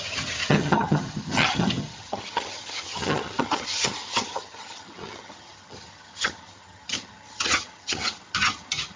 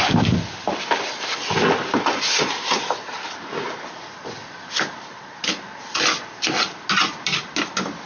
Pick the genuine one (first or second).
second